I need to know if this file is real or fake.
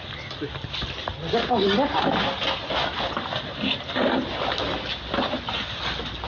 real